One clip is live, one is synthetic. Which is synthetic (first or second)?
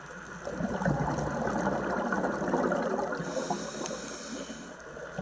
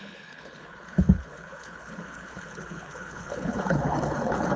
second